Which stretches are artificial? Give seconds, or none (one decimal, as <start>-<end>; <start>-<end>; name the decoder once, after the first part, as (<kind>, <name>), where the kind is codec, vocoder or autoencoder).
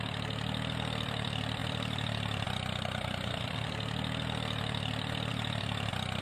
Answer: 0.0-6.2 (vocoder, BigVGAN v2)